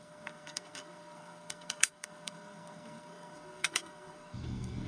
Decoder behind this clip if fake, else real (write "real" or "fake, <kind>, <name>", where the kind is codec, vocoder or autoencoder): fake, codec, SNAC